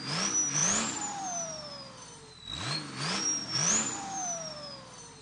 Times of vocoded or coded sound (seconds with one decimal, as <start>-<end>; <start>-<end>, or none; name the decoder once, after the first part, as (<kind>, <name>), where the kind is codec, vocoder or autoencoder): none